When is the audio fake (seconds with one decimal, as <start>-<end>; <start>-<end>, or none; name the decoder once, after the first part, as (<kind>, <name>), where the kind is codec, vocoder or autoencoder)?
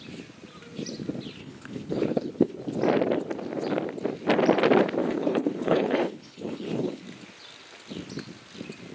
1.4-2.6 (codec, HILCodec); 5.0-7.0